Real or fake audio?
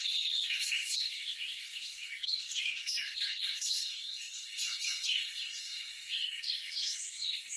fake